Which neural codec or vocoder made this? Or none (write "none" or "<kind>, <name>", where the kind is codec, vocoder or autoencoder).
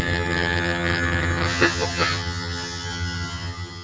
vocoder, HiFi-GAN